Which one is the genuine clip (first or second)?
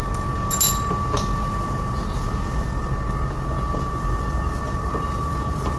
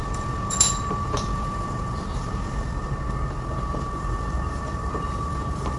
first